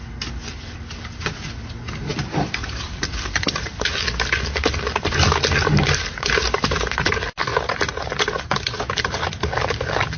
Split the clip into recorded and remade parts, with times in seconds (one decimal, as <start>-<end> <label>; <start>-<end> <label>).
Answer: 0.0-2.1 recorded; 2.1-3.7 remade; 3.7-7.5 recorded; 7.5-9.1 remade; 9.1-10.2 recorded